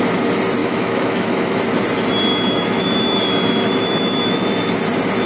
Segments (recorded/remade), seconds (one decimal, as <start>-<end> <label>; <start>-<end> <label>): 0.0-0.6 recorded; 0.6-1.6 remade; 1.6-2.3 recorded; 2.3-4.7 remade; 4.7-5.3 recorded